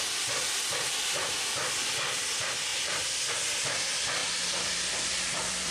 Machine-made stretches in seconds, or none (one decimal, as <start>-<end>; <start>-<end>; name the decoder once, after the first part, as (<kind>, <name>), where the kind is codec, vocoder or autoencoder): 2.7-3.5 (vocoder, BigVGAN v2); 4.2-5.7